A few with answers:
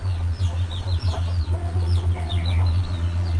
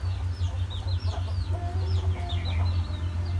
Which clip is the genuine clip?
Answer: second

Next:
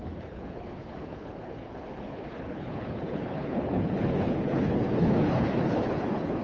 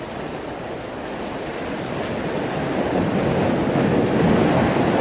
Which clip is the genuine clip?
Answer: second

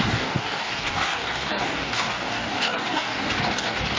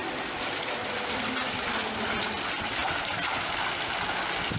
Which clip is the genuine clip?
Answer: second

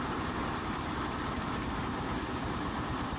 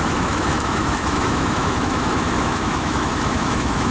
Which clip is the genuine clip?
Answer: first